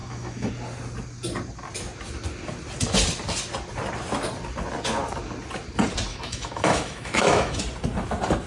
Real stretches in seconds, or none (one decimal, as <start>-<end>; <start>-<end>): 0.5-6.1; 7.6-8.5